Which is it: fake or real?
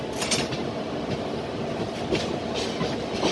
real